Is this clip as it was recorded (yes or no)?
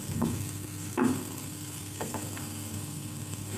no